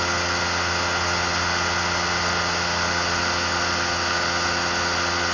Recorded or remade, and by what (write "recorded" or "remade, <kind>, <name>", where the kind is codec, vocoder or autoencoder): recorded